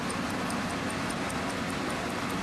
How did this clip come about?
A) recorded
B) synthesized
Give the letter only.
A